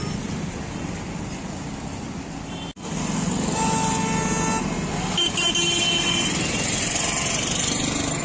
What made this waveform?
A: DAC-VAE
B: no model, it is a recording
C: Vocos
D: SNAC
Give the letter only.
B